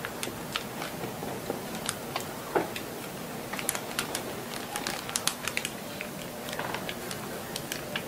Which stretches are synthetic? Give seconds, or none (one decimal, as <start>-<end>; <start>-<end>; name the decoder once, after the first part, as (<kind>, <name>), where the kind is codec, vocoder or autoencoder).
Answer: 1.2-1.8 (vocoder, BigVGAN v2); 5.3-6.2